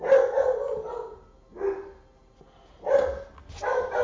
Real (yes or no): yes